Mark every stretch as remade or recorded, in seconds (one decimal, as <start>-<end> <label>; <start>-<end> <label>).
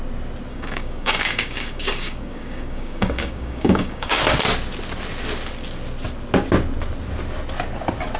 0.0-0.5 recorded; 0.5-4.2 remade; 4.2-8.2 recorded